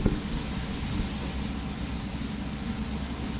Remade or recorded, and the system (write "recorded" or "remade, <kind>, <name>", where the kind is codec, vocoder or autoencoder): recorded